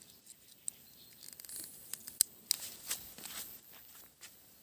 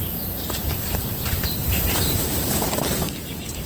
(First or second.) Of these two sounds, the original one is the first